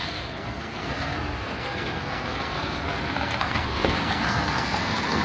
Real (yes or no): no